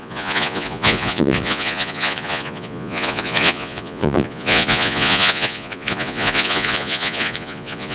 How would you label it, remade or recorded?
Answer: remade